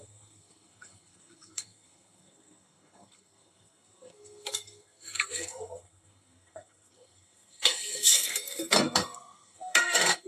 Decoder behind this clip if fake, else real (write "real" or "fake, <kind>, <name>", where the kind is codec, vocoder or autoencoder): fake, codec, SNAC